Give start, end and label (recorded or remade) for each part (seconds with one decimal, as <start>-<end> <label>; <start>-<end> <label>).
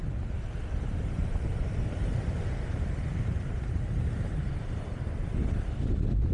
0.0-1.2 recorded; 1.2-5.0 remade; 5.0-6.3 recorded